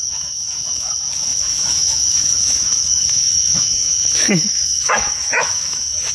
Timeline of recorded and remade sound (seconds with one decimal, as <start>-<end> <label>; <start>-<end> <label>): 0.0-6.1 remade